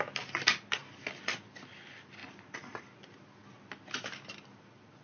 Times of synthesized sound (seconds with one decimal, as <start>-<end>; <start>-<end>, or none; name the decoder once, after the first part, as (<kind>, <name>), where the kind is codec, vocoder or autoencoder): none